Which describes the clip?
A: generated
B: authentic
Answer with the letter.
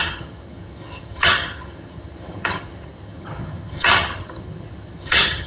A